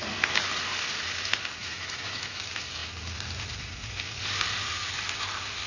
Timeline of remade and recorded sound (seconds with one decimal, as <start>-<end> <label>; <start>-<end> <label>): 0.0-1.6 recorded; 1.6-2.4 remade; 2.4-5.7 recorded

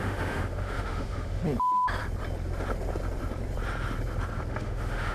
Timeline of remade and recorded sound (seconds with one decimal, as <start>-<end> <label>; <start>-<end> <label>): 0.0-1.4 remade; 1.4-4.5 recorded; 4.5-5.1 remade

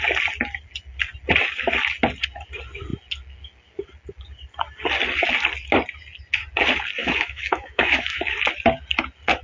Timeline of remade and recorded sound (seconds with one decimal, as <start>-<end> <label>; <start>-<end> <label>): 0.0-7.0 recorded; 7.0-8.3 remade; 8.3-9.4 recorded

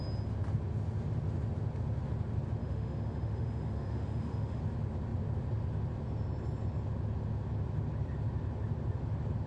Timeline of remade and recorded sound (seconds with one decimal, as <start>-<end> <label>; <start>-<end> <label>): 0.0-2.6 recorded; 2.6-4.6 remade; 4.6-9.5 recorded

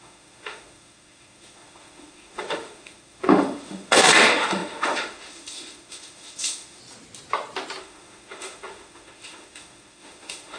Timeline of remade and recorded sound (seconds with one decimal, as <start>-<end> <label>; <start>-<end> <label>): 0.0-6.8 remade; 6.8-7.8 recorded; 7.8-10.6 remade

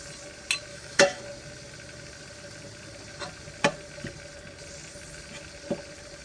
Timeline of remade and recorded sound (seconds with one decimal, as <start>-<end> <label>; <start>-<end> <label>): 0.0-0.7 recorded; 0.7-1.2 remade; 1.2-6.2 recorded

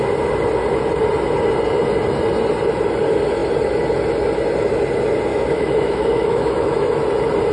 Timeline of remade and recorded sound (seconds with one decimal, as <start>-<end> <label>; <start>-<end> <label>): 0.0-5.3 recorded; 5.3-6.9 remade; 6.9-7.5 recorded

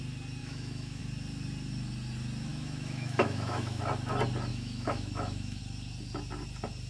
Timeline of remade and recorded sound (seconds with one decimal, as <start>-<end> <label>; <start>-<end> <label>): 0.0-0.4 recorded; 0.4-1.0 remade; 1.0-2.5 recorded; 2.5-3.8 remade; 3.8-4.5 recorded; 4.5-5.6 remade; 5.6-6.9 recorded